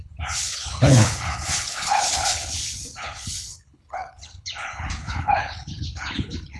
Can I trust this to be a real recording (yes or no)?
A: no